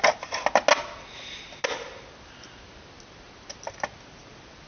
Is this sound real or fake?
real